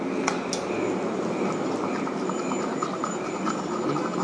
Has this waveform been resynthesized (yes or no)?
no